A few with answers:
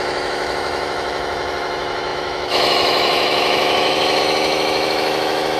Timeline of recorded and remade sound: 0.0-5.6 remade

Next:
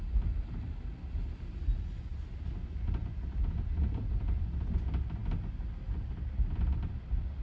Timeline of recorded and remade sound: 0.0-7.4 recorded

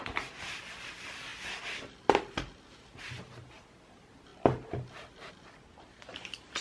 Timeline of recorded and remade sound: 0.0-6.6 recorded